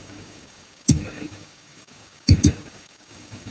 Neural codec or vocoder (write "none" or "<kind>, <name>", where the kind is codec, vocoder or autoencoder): codec, DAC